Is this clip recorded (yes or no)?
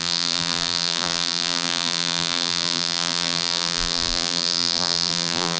no